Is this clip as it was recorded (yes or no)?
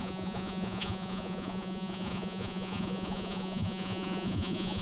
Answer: no